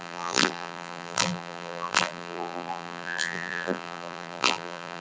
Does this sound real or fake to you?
fake